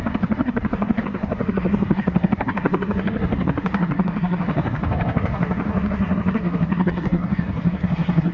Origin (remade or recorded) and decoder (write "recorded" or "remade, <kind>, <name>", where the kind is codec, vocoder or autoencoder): remade, codec, SNAC